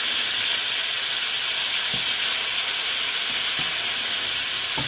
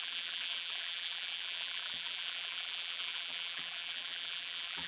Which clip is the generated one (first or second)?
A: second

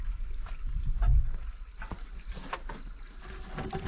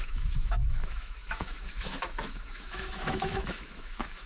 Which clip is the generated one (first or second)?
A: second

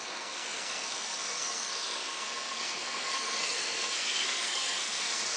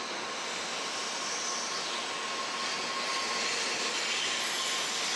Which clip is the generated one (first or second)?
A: first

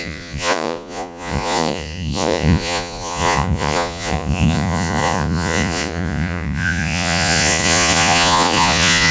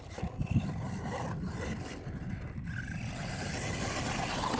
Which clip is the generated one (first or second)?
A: first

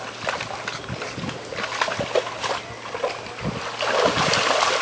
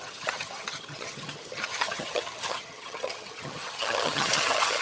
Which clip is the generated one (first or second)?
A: second